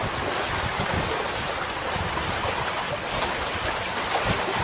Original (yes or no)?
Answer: yes